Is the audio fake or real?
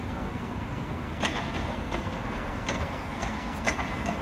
fake